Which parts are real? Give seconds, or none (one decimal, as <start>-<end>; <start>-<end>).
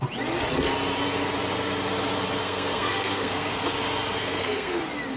0.0-2.4; 3.6-4.2; 4.8-5.2